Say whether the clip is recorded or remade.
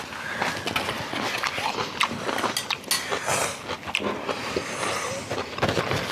recorded